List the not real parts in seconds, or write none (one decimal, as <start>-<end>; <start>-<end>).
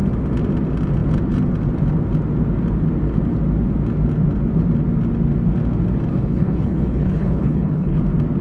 6.1-8.0